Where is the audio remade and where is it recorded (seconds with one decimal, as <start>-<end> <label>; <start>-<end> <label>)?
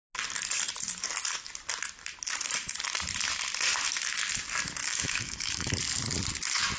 0.0-4.8 recorded; 4.8-5.7 remade; 5.7-6.8 recorded